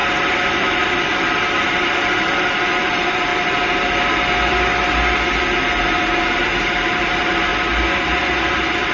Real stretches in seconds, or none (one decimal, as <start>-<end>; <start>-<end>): 3.3-6.2; 7.5-8.9